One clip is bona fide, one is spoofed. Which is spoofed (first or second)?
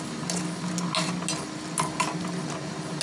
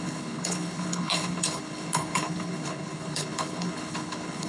second